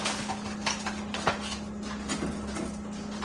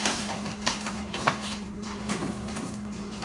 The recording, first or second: first